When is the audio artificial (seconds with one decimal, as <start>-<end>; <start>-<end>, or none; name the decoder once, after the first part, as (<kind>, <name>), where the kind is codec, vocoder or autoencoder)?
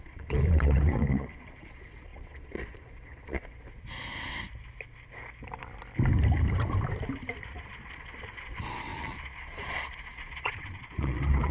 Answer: 0.0-3.5 (vocoder, Vocos); 7.5-11.5